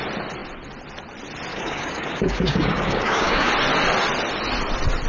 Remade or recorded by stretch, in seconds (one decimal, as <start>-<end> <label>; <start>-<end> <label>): 0.0-1.5 recorded; 1.5-3.5 remade; 3.5-5.1 recorded